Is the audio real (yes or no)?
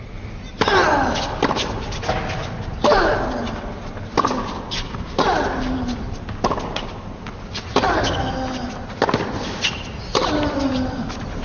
yes